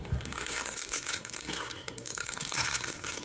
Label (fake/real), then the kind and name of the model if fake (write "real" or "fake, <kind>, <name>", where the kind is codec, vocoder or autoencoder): fake, codec, SNAC